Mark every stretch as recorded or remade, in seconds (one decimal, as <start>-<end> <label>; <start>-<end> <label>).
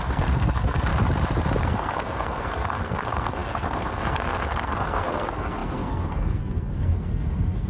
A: 0.0-0.9 remade; 0.9-1.6 recorded; 1.6-7.7 remade